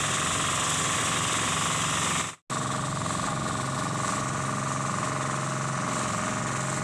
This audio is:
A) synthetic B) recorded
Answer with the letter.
B